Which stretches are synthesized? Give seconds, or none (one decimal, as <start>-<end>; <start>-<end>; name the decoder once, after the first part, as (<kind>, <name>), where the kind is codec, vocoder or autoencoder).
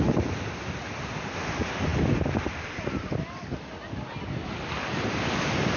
none